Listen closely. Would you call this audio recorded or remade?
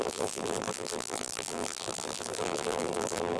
remade